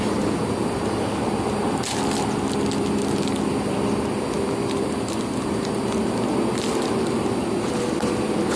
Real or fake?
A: real